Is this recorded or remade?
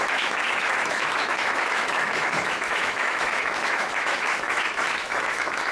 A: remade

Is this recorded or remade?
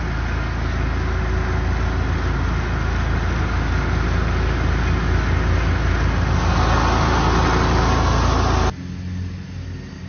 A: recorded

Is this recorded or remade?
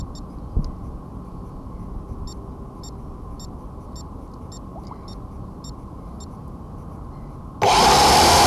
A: recorded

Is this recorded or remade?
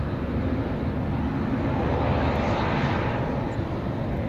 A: recorded